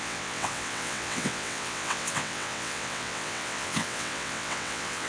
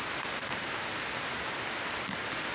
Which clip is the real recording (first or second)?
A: second